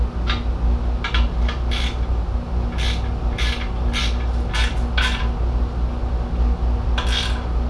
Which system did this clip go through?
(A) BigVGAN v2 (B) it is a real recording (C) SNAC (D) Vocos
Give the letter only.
B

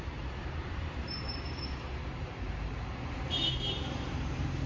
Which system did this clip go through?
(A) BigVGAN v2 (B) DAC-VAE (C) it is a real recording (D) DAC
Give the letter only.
A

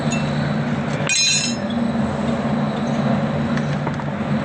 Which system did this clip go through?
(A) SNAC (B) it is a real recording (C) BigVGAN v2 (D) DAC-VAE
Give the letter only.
B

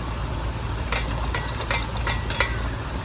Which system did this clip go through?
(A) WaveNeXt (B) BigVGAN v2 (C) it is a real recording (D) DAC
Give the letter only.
C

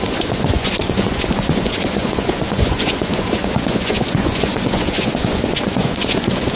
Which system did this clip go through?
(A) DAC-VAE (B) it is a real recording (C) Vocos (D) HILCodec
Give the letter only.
C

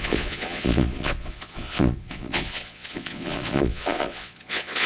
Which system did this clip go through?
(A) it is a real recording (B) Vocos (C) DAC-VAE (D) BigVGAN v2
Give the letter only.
B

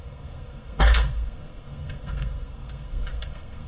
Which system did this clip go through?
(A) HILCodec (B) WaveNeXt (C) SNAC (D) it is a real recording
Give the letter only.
C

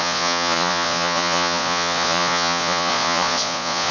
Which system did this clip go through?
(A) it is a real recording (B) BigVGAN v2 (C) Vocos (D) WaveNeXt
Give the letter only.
C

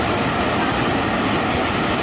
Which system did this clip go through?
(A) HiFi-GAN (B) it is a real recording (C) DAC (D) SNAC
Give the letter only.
B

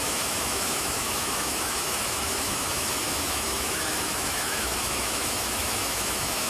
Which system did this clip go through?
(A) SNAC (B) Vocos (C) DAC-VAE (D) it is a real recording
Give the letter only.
C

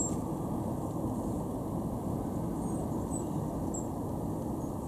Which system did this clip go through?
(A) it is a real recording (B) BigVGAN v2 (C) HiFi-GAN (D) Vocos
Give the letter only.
A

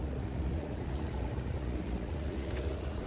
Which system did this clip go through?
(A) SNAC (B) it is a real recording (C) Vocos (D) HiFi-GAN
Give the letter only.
C